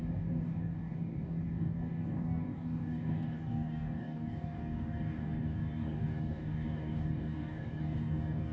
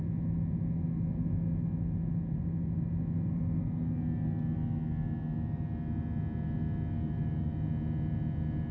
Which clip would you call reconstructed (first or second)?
first